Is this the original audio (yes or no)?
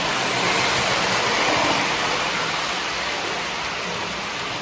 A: yes